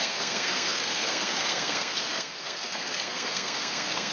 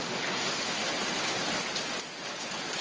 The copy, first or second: first